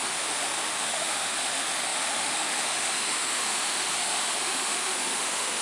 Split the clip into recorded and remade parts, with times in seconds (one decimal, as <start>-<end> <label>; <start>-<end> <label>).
0.0-5.6 remade